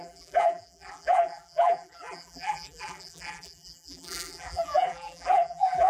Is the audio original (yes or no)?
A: no